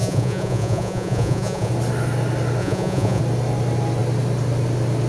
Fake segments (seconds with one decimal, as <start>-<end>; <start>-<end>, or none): 0.0-1.7; 2.6-3.2